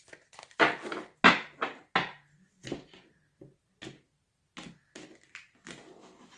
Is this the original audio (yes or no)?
yes